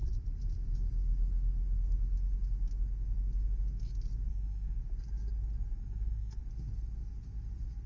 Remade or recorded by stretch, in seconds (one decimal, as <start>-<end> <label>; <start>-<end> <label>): 0.0-4.3 recorded; 4.3-4.8 remade; 4.8-5.8 recorded; 5.8-6.4 remade; 6.4-7.9 recorded